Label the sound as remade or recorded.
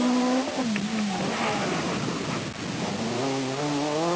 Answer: recorded